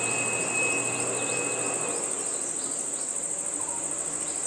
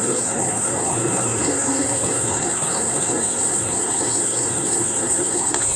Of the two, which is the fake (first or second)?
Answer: second